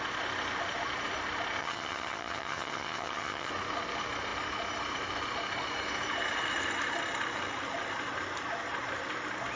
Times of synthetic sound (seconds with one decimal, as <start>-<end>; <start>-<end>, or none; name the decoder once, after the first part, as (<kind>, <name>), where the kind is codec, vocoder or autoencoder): 1.6-3.5 (vocoder, HiFi-GAN)